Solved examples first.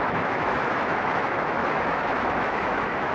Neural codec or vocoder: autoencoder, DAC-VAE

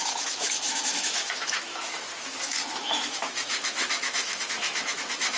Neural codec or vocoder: autoencoder, DAC-VAE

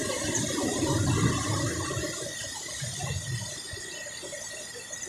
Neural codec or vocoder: none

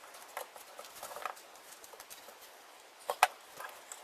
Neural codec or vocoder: none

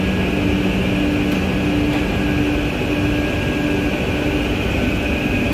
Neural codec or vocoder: none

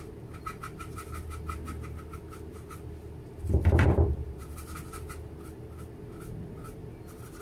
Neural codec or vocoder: none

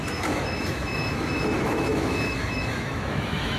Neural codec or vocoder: autoencoder, DAC-VAE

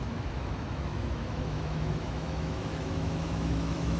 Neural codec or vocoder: autoencoder, DAC-VAE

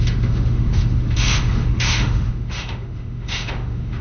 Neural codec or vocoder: autoencoder, DAC-VAE